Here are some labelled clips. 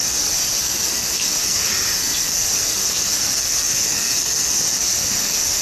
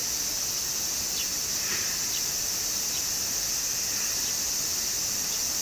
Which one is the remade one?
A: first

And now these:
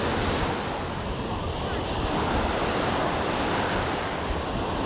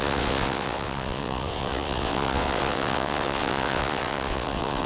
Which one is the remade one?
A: second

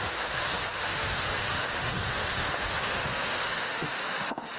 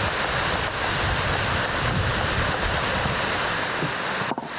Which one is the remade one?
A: first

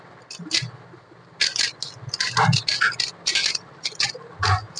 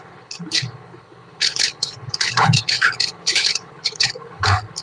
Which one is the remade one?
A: second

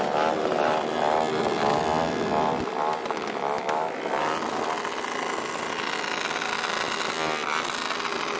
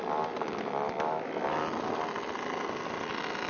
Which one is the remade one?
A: second